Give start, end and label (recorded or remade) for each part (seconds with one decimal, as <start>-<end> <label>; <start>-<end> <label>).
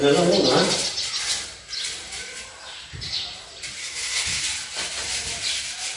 0.0-3.8 recorded; 3.8-4.4 remade; 4.4-6.0 recorded